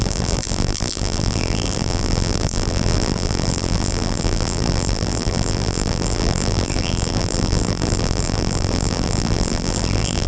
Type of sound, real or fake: fake